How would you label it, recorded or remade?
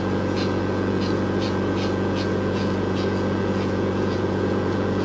remade